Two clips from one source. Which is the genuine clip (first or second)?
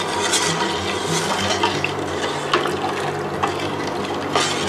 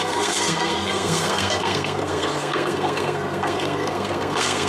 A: first